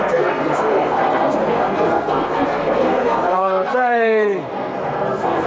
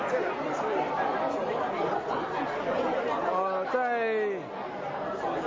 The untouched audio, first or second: second